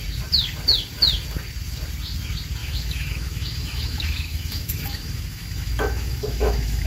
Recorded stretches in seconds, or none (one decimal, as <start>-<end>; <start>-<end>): 0.0-2.6